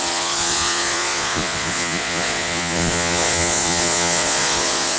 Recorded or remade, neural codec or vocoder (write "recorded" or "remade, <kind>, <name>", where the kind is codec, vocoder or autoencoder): remade, vocoder, Vocos